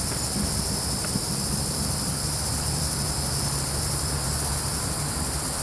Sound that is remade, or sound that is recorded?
remade